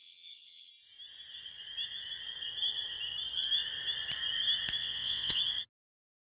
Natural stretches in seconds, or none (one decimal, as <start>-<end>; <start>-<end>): 0.7-4.8; 5.4-6.4